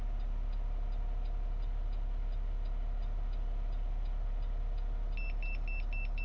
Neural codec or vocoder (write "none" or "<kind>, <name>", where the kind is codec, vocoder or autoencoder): none